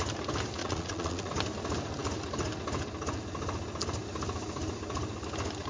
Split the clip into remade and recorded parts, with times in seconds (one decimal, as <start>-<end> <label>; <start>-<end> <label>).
0.0-0.6 recorded; 0.6-1.3 remade; 1.3-5.7 recorded